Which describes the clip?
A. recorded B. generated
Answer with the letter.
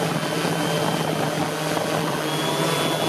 A